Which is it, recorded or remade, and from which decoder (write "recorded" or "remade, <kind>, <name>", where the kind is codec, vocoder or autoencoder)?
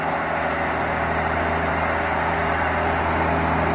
recorded